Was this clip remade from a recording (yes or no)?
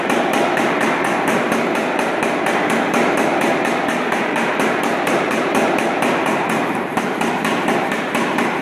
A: yes